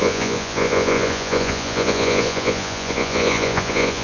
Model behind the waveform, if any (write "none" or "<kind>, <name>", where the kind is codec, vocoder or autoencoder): vocoder, Vocos